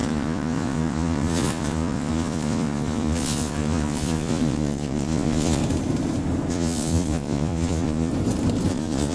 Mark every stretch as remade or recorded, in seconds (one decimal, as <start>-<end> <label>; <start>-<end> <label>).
0.0-5.6 remade; 5.6-6.5 recorded; 6.5-8.1 remade; 8.1-8.7 recorded; 8.7-9.1 remade